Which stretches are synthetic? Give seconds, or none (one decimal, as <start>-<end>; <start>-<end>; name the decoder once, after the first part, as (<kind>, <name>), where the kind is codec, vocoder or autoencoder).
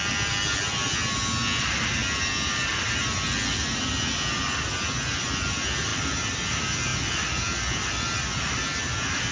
none